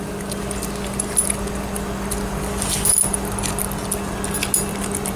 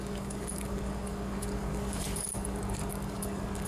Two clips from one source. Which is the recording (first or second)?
first